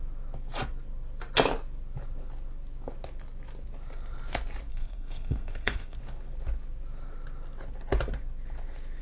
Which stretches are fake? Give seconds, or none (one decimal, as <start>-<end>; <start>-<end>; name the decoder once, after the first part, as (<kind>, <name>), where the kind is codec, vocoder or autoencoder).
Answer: 4.7-6.0 (codec, SNAC)